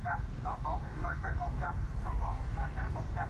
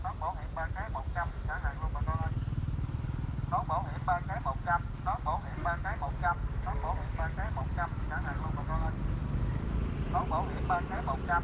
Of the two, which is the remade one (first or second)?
first